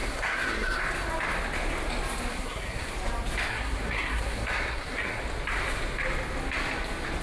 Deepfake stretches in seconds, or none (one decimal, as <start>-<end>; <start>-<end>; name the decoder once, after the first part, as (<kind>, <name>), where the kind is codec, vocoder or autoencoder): 0.0-0.8 (codec, SNAC); 2.3-2.9; 3.5-5.2